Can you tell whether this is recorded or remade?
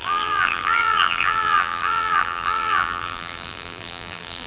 remade